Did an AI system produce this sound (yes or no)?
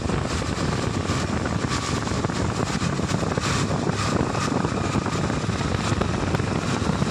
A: no